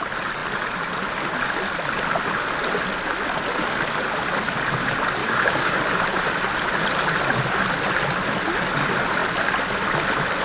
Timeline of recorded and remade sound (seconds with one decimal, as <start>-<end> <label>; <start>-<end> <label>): 0.0-5.2 recorded; 5.2-5.8 remade; 5.8-10.4 recorded